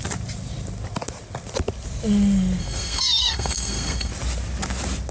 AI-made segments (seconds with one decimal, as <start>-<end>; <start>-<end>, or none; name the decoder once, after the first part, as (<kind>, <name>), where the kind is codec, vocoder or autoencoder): 2.6-4.1 (codec, SNAC)